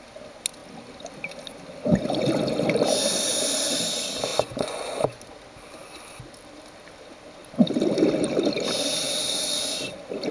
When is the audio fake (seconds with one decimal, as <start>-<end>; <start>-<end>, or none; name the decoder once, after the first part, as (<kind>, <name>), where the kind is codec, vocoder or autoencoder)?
4.3-5.2 (vocoder, Vocos)